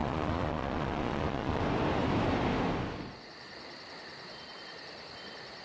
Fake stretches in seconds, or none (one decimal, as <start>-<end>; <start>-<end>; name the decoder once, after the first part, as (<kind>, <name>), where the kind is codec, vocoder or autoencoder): 0.0-1.6 (vocoder, Vocos)